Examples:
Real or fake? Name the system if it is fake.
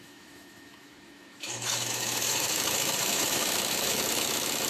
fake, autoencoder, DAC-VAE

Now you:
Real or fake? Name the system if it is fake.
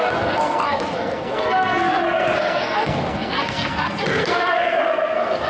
fake, codec, SNAC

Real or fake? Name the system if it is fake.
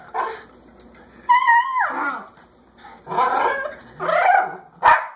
real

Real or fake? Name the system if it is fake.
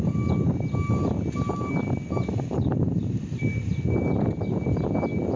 real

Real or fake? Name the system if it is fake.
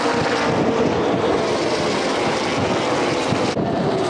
real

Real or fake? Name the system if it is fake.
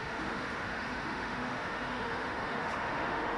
fake, autoencoder, DAC-VAE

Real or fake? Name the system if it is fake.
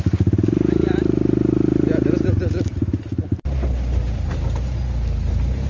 real